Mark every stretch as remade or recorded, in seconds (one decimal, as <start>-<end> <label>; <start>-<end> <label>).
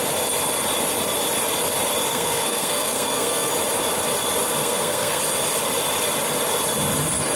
0.0-2.1 recorded; 2.1-3.5 remade; 3.5-4.6 recorded; 4.6-5.2 remade; 5.2-7.4 recorded